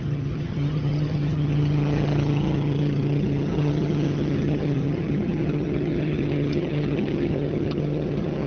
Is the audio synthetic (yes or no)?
yes